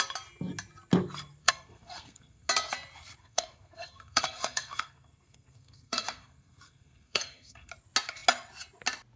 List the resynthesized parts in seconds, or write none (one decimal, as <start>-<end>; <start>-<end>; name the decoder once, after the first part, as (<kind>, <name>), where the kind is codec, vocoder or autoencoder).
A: 1.4-2.5 (codec, SNAC); 3.2-7.7